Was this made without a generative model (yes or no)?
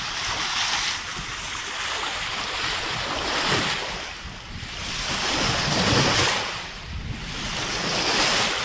yes